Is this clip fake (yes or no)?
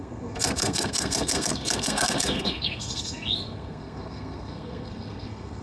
yes